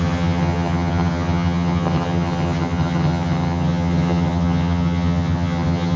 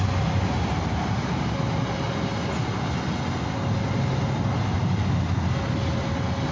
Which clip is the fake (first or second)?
first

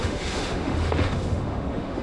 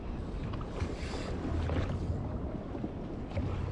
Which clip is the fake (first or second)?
first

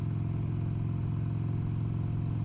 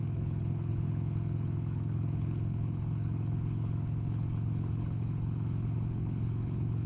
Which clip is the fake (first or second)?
second